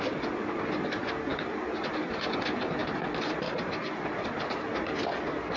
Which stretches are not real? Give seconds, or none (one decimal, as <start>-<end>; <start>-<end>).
none